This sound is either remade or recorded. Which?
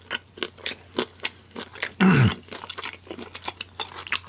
recorded